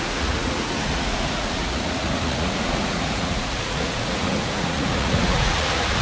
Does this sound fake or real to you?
fake